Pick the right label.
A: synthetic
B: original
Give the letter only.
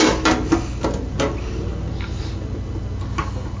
B